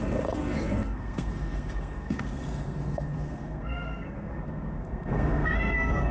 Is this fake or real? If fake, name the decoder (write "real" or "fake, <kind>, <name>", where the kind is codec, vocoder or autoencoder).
fake, codec, SNAC